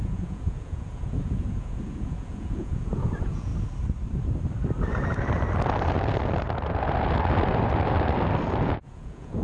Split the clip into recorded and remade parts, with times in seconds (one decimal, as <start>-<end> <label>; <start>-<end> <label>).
0.0-3.5 remade; 3.5-8.7 recorded; 8.7-9.4 remade